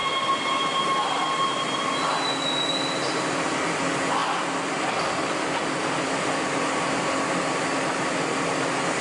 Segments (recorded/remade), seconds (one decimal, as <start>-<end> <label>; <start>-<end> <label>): 0.0-1.8 remade; 1.8-9.0 recorded